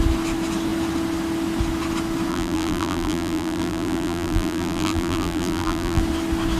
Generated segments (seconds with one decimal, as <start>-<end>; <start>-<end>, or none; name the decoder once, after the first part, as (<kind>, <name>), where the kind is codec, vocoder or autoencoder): 2.3-6.0 (vocoder, BigVGAN v2)